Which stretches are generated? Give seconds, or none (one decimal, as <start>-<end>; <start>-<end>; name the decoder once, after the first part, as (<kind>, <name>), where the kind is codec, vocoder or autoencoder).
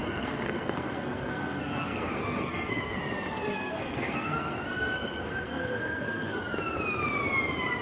0.0-3.0 (codec, SNAC); 3.5-6.4